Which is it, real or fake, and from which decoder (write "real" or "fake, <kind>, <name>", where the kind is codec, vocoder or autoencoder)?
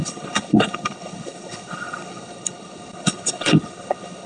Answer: fake, codec, HILCodec